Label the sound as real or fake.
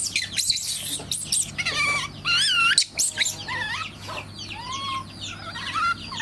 real